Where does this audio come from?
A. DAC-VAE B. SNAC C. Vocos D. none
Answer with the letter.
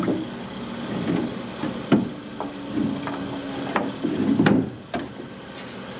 D